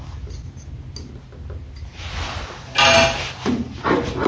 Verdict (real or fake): real